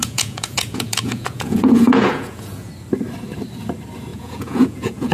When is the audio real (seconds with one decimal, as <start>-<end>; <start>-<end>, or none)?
2.7-4.1

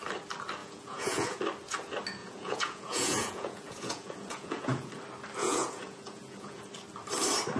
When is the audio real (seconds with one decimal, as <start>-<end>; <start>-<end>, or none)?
0.0-0.6; 1.4-2.2; 4.9-5.4; 6.6-7.6

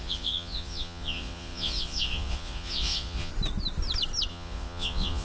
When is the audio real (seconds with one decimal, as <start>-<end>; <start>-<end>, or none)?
3.3-4.3

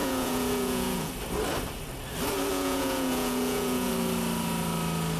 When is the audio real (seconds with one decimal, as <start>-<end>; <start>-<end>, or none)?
1.1-2.5; 3.9-5.2